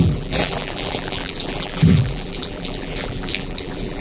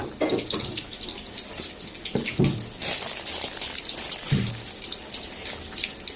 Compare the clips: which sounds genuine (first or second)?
second